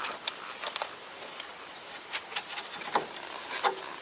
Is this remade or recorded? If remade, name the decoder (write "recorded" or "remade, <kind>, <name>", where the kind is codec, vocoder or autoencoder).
recorded